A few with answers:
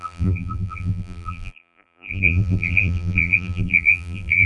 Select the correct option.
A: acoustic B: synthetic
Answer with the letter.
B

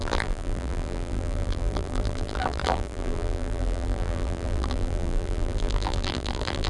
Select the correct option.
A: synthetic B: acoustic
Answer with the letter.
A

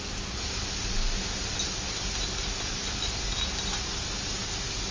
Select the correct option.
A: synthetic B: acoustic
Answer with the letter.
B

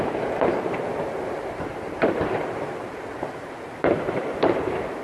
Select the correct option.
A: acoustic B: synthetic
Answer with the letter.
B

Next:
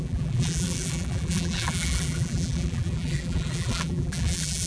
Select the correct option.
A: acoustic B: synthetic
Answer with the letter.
B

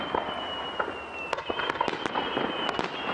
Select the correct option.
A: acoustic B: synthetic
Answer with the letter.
A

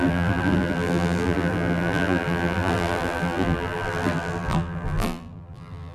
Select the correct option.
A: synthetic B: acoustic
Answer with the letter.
A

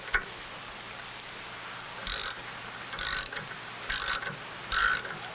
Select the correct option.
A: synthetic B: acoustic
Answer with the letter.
B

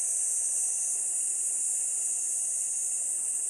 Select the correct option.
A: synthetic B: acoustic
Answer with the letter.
B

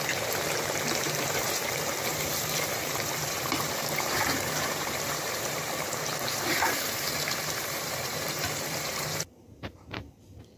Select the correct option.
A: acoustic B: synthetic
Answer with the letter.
B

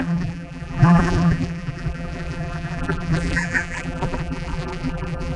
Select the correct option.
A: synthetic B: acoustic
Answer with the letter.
A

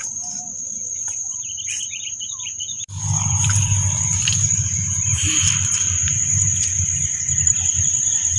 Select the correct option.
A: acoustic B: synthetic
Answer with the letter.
B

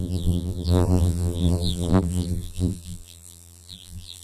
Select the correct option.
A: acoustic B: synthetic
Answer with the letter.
B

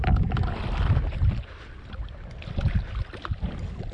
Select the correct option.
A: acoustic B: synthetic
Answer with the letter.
B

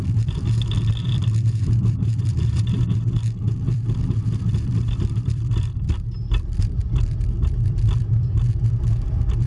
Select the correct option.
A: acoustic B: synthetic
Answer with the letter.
B